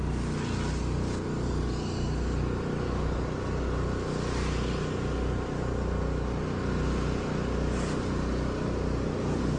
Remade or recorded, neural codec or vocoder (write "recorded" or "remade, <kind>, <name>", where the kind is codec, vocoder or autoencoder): recorded